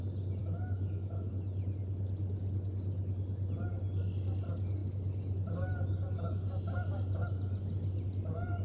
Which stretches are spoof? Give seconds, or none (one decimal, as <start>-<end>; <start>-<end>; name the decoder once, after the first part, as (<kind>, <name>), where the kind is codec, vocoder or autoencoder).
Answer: 0.4-1.3 (autoencoder, DAC-VAE)

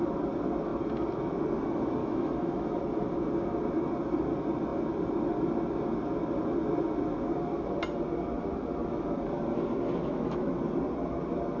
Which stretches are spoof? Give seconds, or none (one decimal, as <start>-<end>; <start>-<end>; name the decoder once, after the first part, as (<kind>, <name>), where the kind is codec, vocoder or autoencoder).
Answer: 2.0-2.7 (autoencoder, DAC-VAE); 10.0-10.5